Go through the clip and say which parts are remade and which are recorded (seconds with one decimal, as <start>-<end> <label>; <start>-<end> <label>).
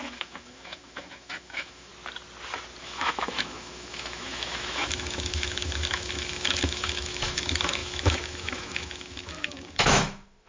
0.0-1.9 remade; 1.9-2.8 recorded; 2.8-10.5 remade